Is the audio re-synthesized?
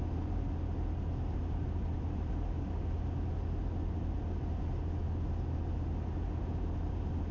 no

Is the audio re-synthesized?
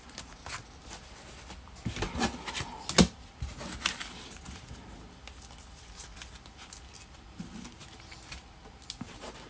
no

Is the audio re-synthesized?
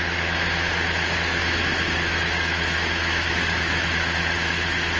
yes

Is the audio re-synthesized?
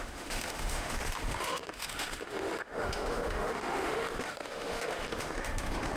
yes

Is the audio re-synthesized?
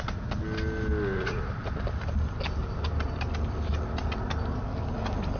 no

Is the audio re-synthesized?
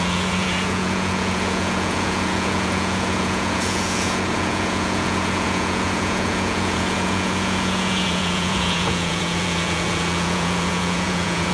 yes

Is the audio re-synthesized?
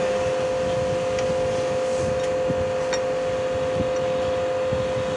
no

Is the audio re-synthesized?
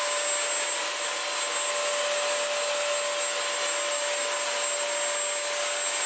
no